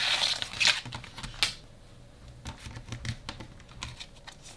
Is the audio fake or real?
real